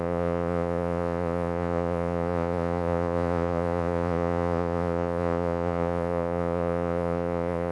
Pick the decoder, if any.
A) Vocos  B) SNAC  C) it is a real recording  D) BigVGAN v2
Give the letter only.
A